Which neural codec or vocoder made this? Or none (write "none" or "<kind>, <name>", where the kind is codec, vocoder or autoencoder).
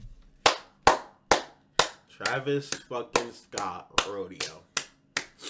none